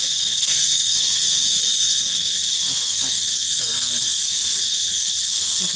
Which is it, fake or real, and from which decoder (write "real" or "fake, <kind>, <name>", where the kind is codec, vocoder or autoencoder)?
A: fake, codec, SNAC